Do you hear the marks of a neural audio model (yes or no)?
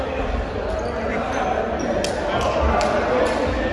no